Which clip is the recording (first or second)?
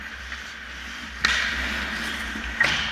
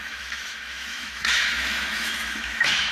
first